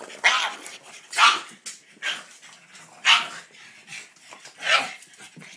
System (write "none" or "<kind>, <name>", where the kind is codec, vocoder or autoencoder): none